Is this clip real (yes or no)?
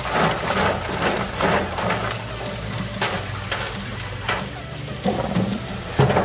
yes